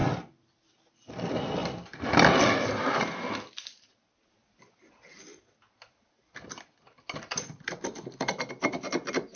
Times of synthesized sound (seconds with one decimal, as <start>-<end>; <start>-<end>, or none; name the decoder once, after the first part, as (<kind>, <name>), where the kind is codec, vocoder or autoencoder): none